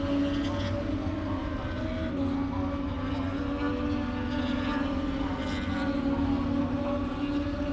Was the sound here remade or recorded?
recorded